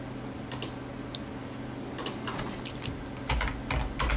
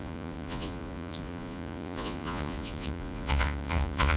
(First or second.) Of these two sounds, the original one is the first